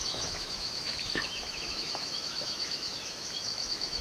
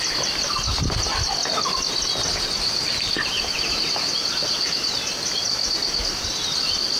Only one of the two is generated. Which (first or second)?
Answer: first